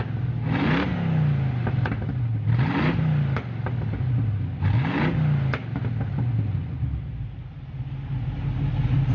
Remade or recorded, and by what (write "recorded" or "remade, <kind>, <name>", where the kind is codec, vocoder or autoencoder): recorded